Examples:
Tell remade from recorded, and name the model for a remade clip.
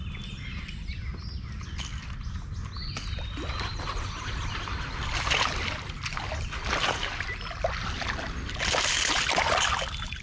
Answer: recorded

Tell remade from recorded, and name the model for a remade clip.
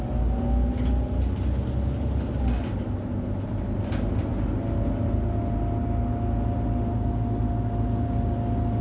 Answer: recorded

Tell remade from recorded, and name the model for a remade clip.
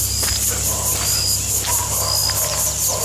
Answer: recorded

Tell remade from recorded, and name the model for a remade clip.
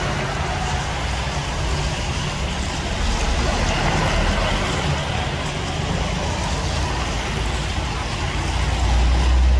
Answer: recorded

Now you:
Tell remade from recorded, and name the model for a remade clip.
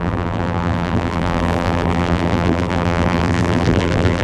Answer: remade, vocoder, BigVGAN v2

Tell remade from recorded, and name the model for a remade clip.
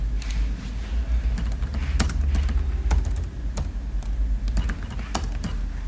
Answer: recorded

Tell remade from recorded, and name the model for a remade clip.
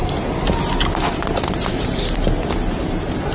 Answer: recorded